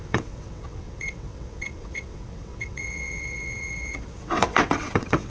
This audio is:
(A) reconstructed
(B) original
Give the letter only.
A